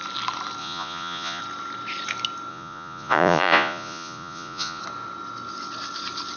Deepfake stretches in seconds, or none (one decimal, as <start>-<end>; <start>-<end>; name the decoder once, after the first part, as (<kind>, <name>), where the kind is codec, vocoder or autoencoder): 0.6-1.4 (vocoder, Vocos); 2.5-4.8